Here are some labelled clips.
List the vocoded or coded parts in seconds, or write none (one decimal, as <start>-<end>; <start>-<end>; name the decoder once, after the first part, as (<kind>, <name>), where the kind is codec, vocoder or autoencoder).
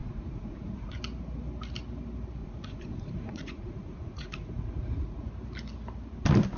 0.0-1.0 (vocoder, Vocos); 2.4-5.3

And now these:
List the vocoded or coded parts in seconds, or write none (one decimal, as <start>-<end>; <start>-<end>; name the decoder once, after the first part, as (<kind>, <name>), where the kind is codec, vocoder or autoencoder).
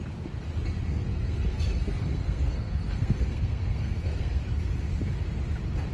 0.9-4.4 (codec, SNAC)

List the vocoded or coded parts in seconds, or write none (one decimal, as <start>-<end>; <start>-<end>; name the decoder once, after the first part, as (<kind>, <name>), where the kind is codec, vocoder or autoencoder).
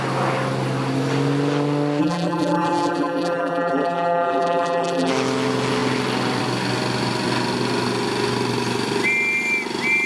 2.0-5.1 (vocoder, BigVGAN v2)